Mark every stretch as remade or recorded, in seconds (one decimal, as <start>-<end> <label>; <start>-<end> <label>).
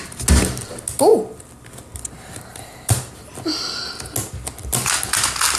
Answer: 0.0-2.5 recorded; 2.5-3.1 remade; 3.1-5.6 recorded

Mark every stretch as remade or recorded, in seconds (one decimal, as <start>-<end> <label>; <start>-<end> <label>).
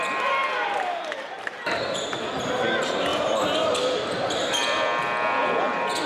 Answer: 0.0-6.1 remade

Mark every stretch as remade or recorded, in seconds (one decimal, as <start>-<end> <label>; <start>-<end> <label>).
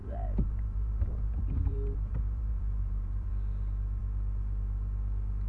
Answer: 0.0-3.3 remade; 3.3-5.5 recorded